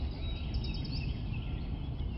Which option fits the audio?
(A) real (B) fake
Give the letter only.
A